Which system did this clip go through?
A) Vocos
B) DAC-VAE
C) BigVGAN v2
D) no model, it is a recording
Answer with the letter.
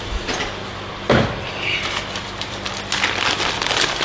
D